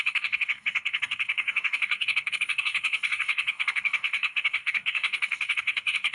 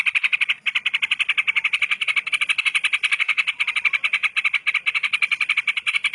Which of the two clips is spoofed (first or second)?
first